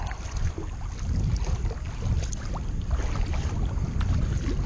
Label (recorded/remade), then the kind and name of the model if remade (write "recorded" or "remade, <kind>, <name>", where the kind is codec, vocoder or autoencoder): recorded